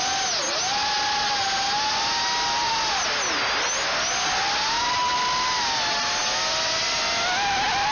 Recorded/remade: recorded